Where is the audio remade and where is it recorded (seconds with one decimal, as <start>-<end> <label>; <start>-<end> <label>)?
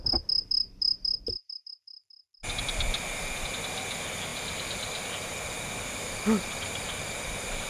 0.0-7.7 recorded